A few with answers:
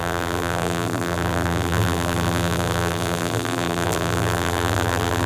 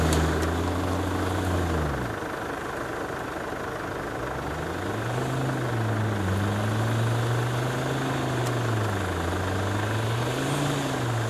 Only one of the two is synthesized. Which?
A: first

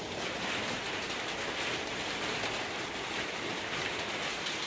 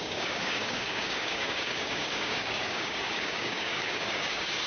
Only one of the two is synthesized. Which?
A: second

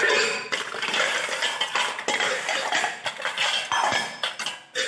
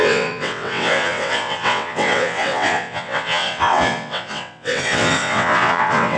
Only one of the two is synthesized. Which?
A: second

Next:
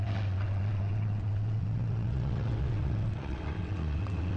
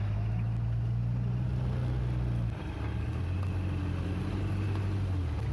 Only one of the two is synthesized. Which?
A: first